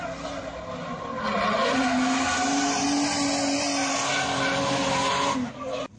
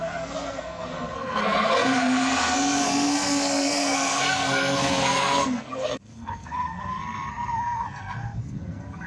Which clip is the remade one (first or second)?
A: second